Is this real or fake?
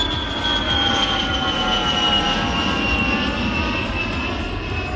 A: real